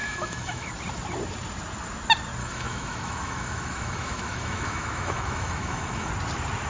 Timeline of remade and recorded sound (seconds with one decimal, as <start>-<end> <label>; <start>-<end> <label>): 0.0-0.7 remade; 0.7-2.4 recorded; 2.4-6.1 remade; 6.1-6.7 recorded

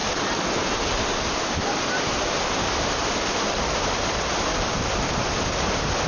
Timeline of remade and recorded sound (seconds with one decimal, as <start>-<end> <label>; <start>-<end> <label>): 0.0-6.1 recorded

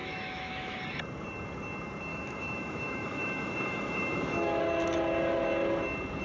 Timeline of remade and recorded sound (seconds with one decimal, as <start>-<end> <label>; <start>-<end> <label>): 0.0-0.8 remade; 0.8-2.1 recorded; 2.1-4.6 remade; 4.6-6.2 recorded

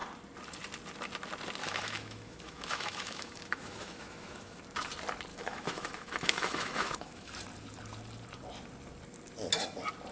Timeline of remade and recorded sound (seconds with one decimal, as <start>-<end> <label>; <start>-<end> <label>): 0.0-1.6 recorded; 1.6-4.6 remade; 4.6-5.3 recorded; 5.3-7.3 remade; 7.3-10.1 recorded